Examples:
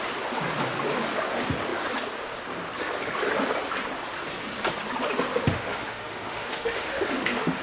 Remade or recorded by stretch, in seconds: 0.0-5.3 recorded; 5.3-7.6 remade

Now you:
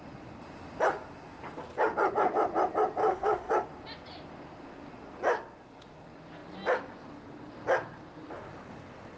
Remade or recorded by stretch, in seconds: 0.0-3.0 recorded; 3.0-3.5 remade; 3.5-9.2 recorded

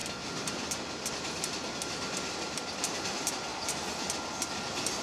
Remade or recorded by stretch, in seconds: 0.0-5.0 recorded

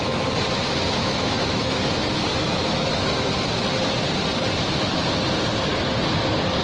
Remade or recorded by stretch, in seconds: 0.0-1.0 recorded; 1.0-1.8 remade; 1.8-2.3 recorded; 2.3-3.3 remade; 3.3-6.6 recorded

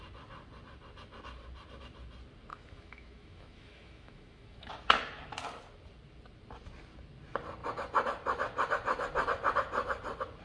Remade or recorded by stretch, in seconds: 0.0-2.5 recorded; 2.5-4.7 remade; 4.7-10.4 recorded

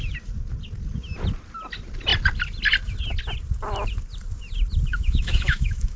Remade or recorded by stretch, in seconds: 0.0-4.9 recorded; 4.9-6.0 remade

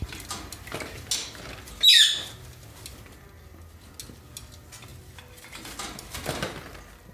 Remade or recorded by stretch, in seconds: 0.0-7.1 recorded

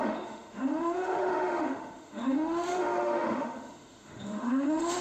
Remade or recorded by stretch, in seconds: 0.0-5.0 remade